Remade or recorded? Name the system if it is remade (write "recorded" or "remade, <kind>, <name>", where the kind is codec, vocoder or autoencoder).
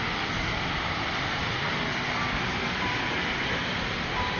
recorded